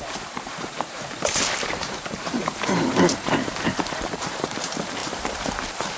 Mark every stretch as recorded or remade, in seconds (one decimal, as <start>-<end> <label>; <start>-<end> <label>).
0.0-6.0 remade